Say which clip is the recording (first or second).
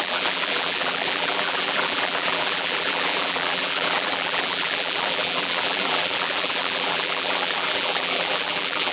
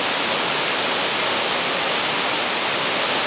second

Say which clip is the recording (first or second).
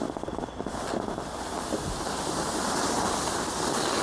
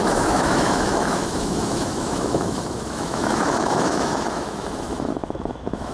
first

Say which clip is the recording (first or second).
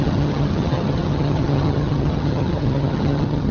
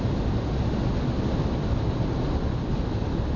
second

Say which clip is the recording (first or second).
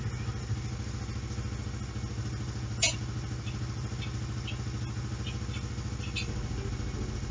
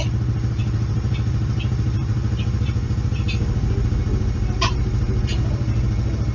first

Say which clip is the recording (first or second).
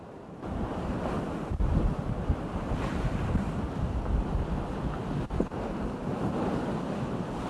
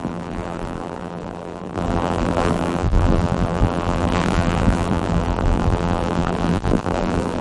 first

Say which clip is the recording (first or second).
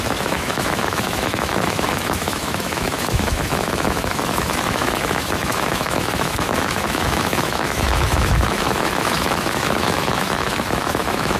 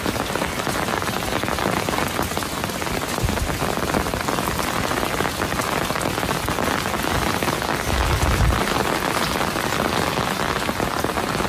second